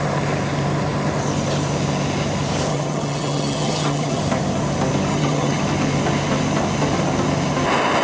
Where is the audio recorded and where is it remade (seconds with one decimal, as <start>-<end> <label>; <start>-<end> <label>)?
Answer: 0.0-2.7 recorded; 2.7-4.2 remade; 4.2-5.1 recorded; 5.1-5.6 remade; 5.6-8.0 recorded